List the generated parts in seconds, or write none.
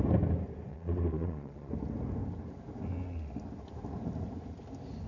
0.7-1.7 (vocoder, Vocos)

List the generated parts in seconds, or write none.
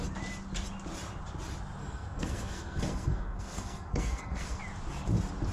1.8-4.6 (codec, SNAC)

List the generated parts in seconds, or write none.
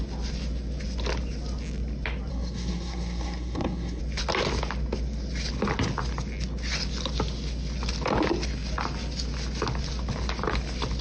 2.3-4.0 (codec, SNAC)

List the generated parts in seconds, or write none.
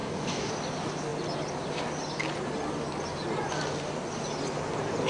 0.0-0.5 (codec, DAC)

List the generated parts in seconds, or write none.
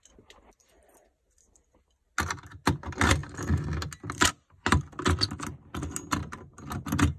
none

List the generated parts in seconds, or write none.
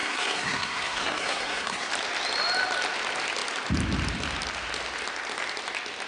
0.0-1.9 (codec, SNAC)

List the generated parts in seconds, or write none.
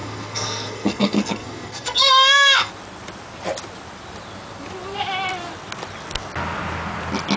0.0-2.7 (codec, SNAC)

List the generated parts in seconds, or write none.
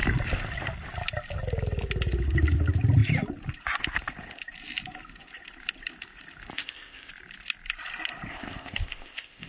6.5-7.1 (codec, ZipCodec); 8.3-9.5